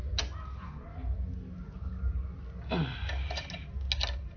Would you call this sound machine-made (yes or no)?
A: no